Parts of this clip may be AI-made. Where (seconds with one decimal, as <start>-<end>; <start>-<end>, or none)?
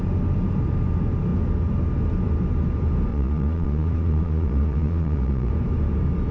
3.1-5.5